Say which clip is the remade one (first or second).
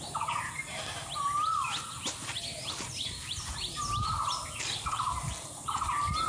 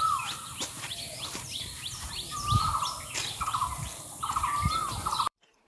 second